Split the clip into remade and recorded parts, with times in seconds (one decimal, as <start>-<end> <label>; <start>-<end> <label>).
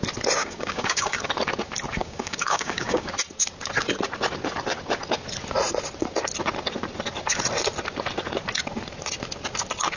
0.0-0.4 recorded; 0.4-1.3 remade; 1.3-2.0 recorded; 2.0-3.1 remade; 3.1-10.0 recorded